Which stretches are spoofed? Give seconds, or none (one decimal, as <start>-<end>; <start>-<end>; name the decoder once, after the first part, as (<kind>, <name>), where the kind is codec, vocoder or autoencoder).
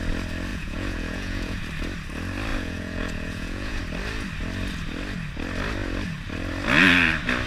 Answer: 0.5-1.6 (vocoder, Vocos); 2.5-3.8